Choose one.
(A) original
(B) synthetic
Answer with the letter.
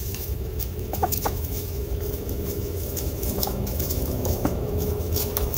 B